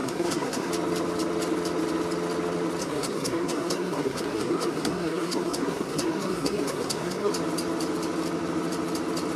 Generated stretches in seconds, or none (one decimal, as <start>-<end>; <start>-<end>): 0.0-0.7; 2.8-7.3